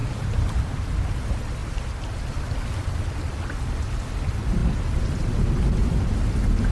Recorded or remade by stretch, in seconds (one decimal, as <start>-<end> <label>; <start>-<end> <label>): 0.0-0.8 remade; 0.8-1.6 recorded; 1.6-3.7 remade; 3.7-6.7 recorded